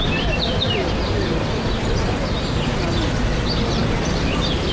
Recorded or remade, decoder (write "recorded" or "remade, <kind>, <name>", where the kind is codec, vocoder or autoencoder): recorded